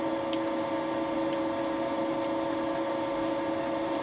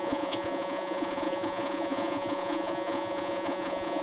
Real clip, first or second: first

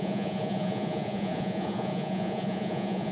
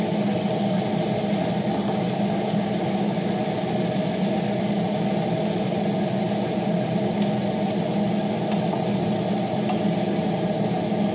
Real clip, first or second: second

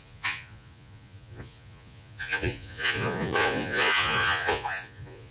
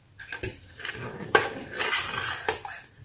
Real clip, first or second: second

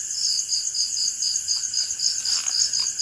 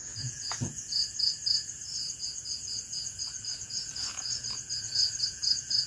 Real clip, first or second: first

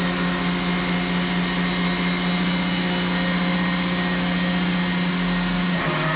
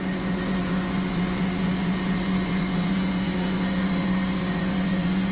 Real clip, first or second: first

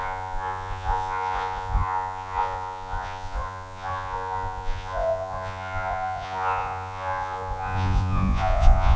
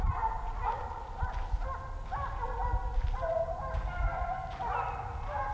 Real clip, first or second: second